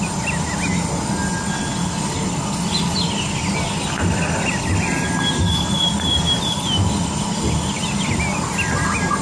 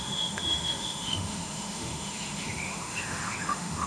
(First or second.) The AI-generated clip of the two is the second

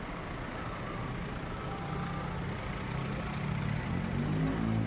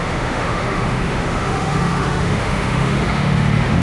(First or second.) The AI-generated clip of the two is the second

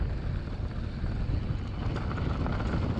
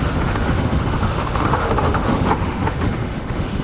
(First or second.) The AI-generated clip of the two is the second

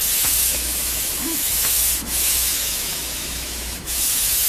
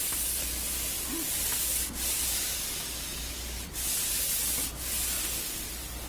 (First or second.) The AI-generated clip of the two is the first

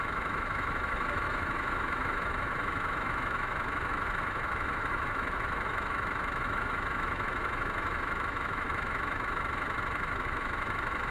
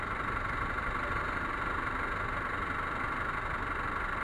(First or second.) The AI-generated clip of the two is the first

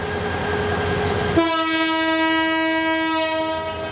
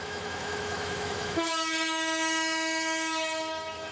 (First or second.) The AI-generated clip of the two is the second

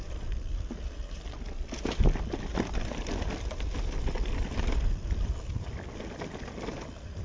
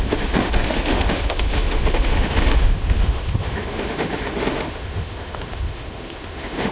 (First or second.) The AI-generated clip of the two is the second